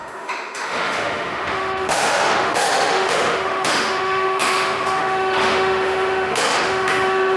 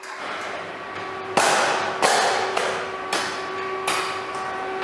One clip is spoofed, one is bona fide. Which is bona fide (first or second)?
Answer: second